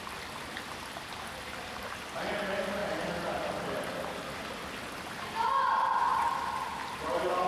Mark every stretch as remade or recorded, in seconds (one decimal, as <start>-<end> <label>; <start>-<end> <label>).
0.0-7.5 recorded